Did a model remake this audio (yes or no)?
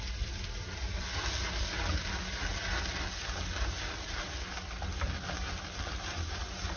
no